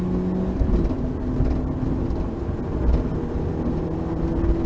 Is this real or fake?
real